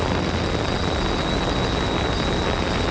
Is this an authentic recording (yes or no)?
yes